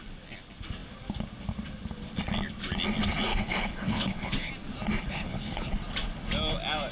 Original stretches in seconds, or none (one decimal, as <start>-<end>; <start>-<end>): 0.0-3.3; 4.5-5.0; 5.7-6.9